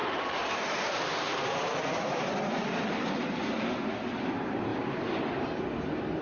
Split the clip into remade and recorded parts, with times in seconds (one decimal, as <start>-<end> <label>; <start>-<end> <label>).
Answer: 0.0-3.7 remade; 3.7-4.7 recorded; 4.7-5.6 remade; 5.6-6.2 recorded